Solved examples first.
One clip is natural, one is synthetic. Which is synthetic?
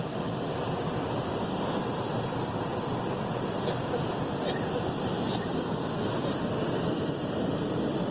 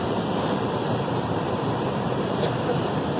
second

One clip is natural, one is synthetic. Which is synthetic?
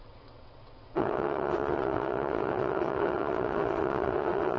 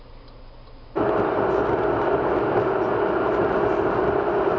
first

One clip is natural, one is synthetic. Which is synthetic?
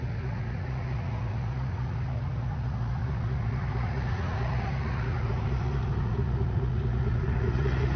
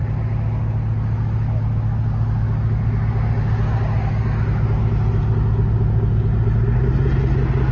first